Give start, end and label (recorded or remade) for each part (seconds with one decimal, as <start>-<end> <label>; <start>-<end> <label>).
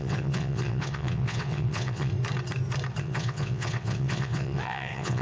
0.0-2.1 remade; 2.1-3.0 recorded; 3.0-5.2 remade